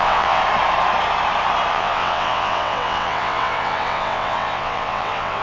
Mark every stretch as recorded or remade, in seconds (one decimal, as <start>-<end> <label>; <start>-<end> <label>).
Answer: 0.0-0.4 remade; 0.4-1.7 recorded; 1.7-5.4 remade